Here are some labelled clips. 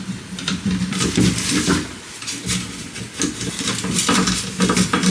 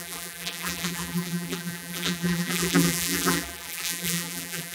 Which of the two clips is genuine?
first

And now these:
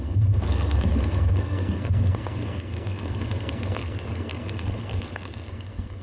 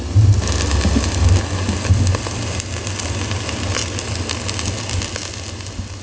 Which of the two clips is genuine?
second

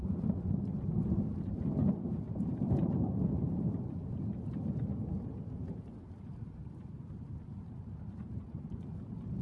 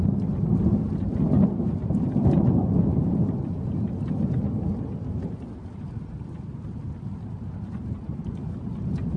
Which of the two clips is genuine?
second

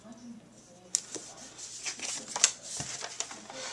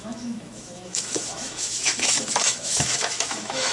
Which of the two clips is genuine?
first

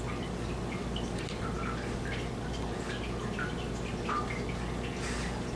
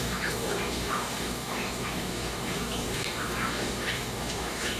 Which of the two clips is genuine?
first